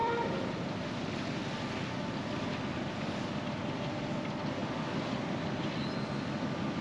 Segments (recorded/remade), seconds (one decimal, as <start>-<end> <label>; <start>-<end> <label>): 0.0-4.1 remade; 4.1-4.6 recorded; 4.6-6.1 remade; 6.1-6.8 recorded